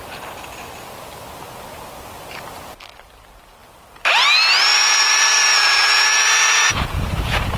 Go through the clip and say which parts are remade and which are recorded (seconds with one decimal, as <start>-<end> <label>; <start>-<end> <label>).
0.0-4.7 recorded; 4.7-7.6 remade